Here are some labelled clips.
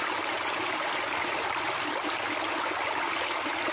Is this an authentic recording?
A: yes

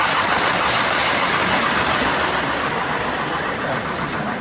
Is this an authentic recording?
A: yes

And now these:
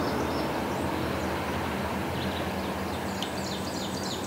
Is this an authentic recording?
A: yes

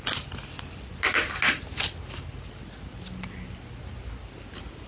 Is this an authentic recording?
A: yes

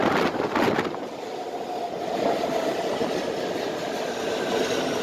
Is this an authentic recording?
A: yes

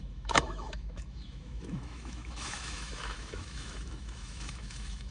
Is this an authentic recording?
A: no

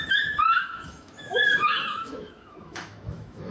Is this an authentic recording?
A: no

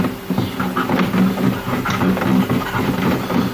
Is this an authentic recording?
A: yes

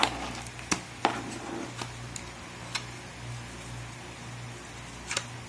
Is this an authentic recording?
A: yes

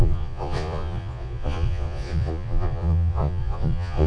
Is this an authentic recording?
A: no